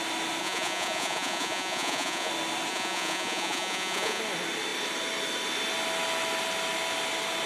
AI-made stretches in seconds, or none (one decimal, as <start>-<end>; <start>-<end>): 0.4-2.3; 2.7-4.2